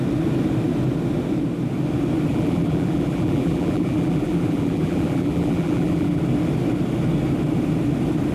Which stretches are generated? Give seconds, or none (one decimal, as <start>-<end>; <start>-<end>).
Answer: 2.3-6.2